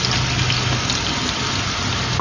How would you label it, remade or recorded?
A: recorded